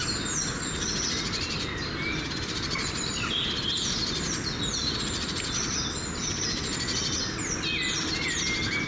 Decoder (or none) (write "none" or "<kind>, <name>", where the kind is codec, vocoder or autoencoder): none